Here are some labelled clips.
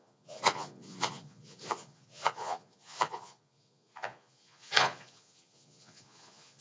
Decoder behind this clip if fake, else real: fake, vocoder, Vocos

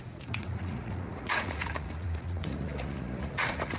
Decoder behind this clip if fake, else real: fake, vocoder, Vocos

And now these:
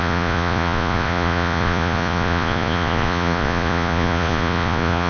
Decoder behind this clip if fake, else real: fake, vocoder, Vocos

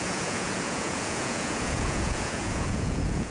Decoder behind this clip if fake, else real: fake, vocoder, Vocos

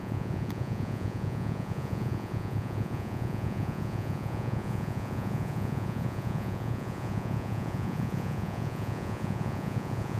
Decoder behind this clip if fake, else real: fake, vocoder, Vocos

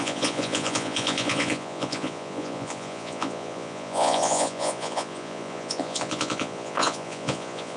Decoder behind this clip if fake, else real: fake, vocoder, Vocos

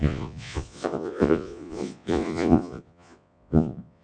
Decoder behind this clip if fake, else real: fake, vocoder, Vocos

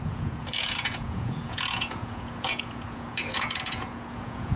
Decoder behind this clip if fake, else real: fake, vocoder, Vocos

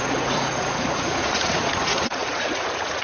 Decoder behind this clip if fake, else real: fake, vocoder, Vocos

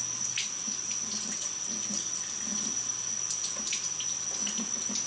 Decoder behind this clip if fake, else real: real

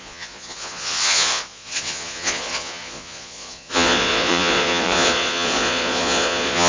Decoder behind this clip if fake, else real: fake, vocoder, Vocos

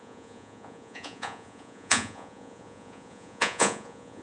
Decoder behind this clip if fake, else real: fake, vocoder, Vocos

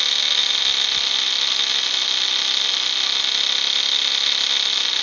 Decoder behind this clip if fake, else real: real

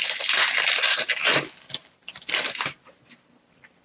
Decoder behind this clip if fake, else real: real